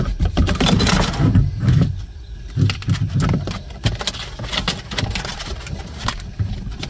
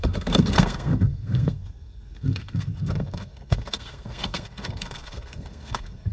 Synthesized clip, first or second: second